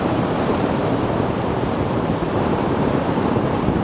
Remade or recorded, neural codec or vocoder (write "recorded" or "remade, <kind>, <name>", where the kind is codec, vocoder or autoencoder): remade, vocoder, BigVGAN v2